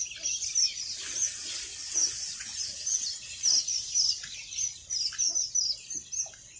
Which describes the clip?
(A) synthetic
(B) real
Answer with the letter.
B